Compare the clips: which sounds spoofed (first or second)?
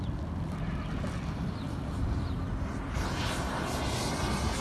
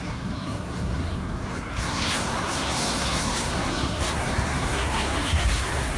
second